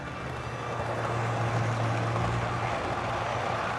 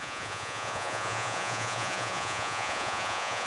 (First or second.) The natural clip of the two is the first